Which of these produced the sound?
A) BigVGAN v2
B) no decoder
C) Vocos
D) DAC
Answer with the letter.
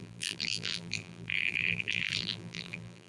A